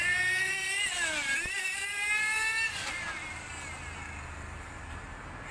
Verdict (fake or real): real